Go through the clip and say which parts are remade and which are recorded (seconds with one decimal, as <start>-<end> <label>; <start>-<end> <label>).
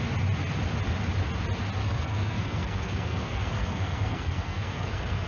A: 0.0-1.8 recorded; 1.8-5.3 remade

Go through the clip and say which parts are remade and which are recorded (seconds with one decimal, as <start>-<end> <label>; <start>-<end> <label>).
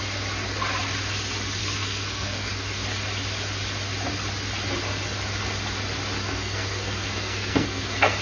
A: 0.0-1.6 recorded; 1.6-2.5 remade; 2.5-6.2 recorded; 6.2-8.2 remade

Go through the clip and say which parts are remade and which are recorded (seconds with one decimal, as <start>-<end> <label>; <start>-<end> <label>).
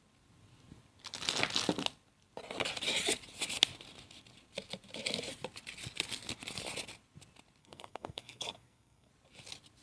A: 0.0-7.6 recorded; 7.6-9.1 remade; 9.1-9.8 recorded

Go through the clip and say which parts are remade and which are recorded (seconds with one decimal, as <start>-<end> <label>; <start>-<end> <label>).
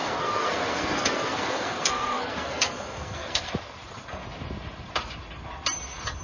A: 0.0-3.5 remade; 3.5-6.2 recorded